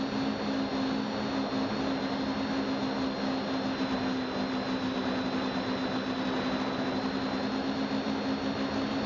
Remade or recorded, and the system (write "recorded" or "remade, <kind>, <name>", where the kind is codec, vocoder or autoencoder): recorded